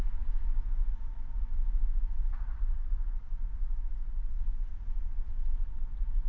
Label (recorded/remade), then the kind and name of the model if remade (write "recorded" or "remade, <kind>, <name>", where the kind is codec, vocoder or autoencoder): remade, vocoder, WaveNeXt